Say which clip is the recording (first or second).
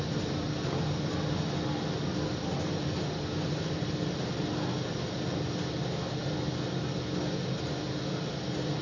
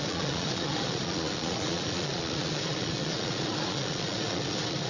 first